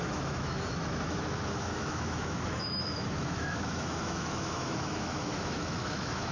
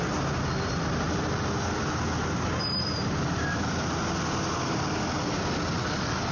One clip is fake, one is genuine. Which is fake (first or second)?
first